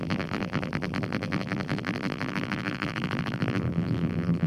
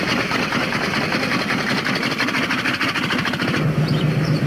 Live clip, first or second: second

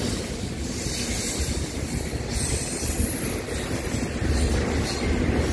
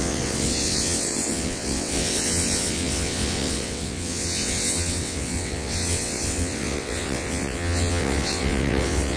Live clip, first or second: first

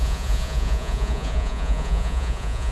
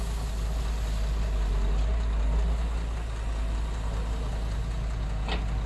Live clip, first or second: second